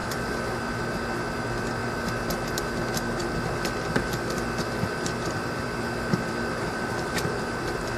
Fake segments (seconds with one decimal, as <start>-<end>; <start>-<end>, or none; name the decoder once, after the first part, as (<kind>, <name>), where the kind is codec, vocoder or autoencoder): 0.0-0.6 (vocoder, BigVGAN v2); 3.2-8.0